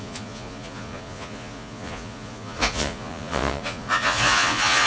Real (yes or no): no